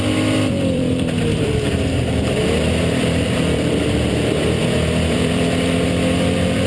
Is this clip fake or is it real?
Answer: fake